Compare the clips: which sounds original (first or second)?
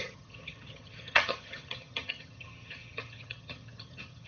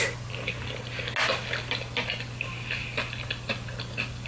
second